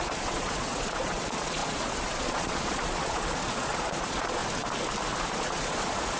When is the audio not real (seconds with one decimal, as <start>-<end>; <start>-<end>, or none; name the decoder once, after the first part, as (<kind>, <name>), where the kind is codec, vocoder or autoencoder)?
0.0-4.4 (vocoder, Vocos); 5.3-6.2